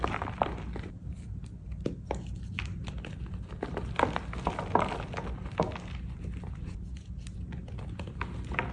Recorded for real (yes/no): yes